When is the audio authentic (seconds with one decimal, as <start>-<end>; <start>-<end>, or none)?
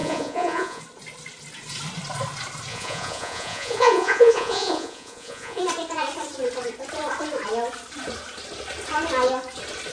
0.8-2.7; 5.6-9.9